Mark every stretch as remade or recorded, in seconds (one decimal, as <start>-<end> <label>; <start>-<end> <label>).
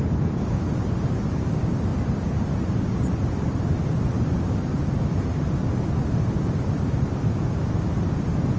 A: 0.0-8.6 recorded